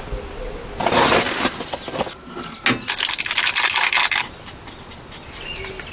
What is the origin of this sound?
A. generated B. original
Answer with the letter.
B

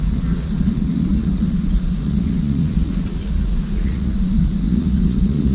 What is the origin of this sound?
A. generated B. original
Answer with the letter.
A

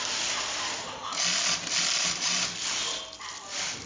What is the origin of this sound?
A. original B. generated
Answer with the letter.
A